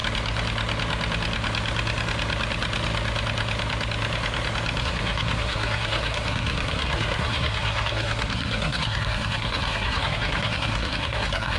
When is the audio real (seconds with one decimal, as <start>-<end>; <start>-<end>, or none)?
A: 0.0-4.8